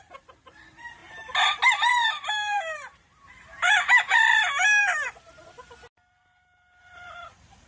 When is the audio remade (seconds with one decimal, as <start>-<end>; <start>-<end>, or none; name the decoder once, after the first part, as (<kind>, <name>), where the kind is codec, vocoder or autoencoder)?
0.0-4.8 (vocoder, BigVGAN v2); 6.8-7.7